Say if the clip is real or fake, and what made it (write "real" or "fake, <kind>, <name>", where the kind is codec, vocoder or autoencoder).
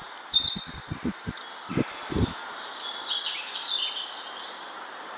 real